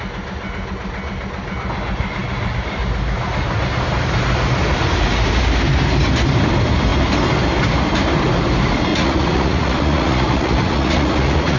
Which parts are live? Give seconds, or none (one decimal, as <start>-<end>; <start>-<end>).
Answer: 0.0-8.9